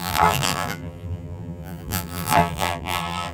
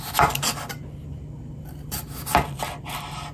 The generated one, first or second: first